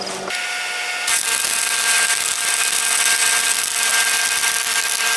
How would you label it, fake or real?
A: real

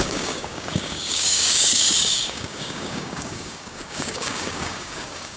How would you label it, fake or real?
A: fake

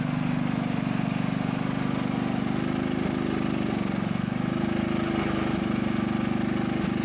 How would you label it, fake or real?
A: real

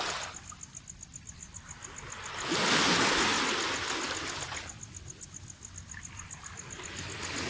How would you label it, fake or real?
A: real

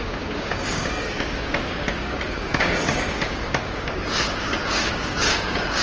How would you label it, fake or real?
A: fake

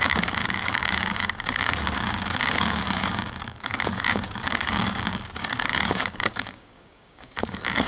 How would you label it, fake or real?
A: fake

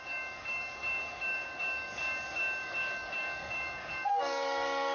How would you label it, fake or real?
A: fake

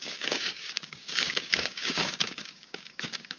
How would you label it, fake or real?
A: fake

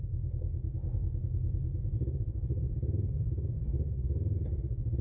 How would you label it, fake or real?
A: fake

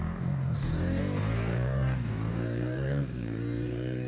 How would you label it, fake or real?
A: fake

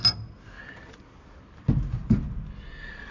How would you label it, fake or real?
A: real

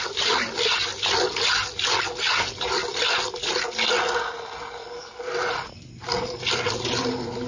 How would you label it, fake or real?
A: real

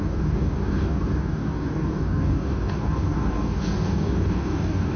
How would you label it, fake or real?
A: fake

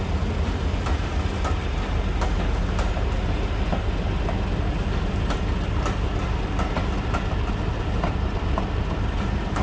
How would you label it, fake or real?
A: real